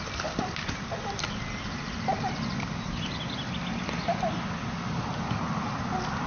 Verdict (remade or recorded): recorded